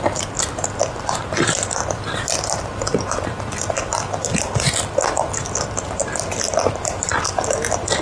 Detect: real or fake real